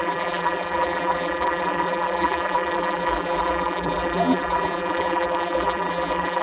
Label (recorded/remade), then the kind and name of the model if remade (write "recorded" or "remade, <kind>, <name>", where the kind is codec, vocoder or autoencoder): remade, vocoder, BigVGAN v2